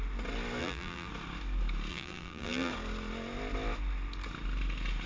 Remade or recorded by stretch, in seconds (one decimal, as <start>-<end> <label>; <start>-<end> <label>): 0.0-0.6 recorded; 0.6-1.1 remade; 1.1-1.9 recorded; 1.9-2.7 remade; 2.7-5.1 recorded